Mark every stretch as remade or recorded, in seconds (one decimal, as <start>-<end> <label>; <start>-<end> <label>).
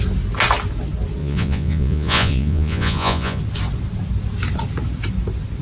0.0-1.2 recorded; 1.2-3.4 remade; 3.4-5.6 recorded